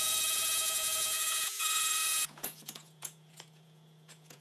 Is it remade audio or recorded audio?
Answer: remade